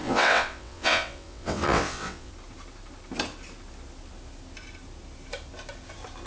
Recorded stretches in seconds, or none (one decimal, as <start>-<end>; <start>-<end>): 2.3-6.3